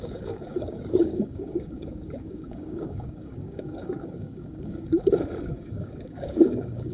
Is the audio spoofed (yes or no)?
yes